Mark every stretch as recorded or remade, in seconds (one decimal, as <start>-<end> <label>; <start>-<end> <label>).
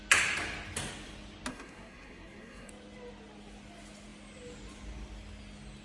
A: 0.0-1.5 recorded; 1.5-2.7 remade; 2.7-5.8 recorded